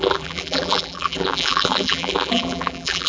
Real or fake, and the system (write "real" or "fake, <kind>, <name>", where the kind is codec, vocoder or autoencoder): fake, vocoder, BigVGAN v2